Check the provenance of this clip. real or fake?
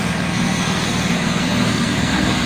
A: fake